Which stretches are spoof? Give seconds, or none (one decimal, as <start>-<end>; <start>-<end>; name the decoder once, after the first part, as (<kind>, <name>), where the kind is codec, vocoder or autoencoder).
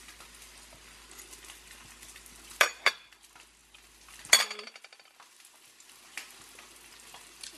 none